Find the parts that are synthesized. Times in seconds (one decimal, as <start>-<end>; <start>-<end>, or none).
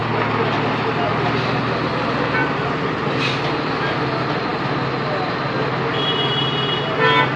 none